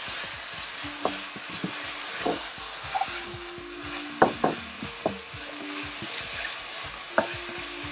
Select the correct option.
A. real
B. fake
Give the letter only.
A